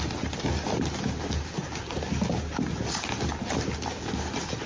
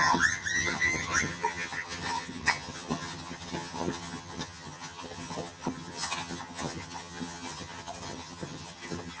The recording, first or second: first